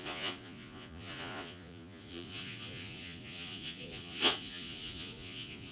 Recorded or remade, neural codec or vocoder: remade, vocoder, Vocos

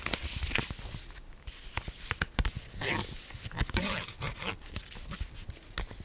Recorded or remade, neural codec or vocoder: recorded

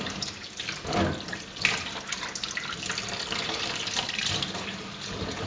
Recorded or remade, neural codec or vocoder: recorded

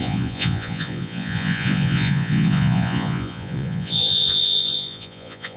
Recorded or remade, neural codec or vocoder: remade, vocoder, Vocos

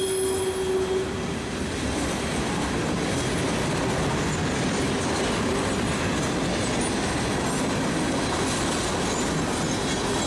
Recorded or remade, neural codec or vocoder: recorded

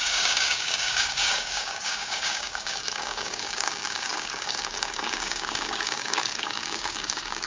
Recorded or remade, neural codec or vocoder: remade, codec, DAC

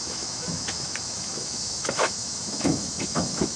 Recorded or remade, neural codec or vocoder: remade, autoencoder, DAC-VAE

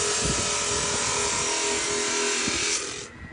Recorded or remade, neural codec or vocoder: recorded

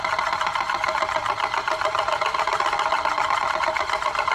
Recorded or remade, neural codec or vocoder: recorded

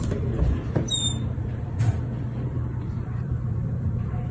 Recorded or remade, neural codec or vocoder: remade, vocoder, BigVGAN v2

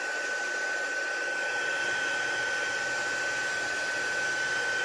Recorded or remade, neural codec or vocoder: recorded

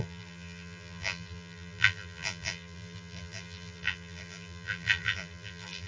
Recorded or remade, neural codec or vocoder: remade, vocoder, BigVGAN v2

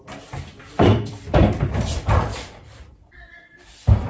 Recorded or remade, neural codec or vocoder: remade, vocoder, BigVGAN v2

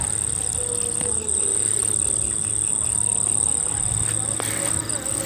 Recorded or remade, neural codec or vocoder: recorded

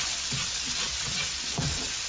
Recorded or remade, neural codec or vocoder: remade, vocoder, WaveNeXt